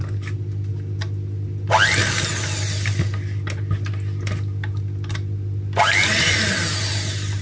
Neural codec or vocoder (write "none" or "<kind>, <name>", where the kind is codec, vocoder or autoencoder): none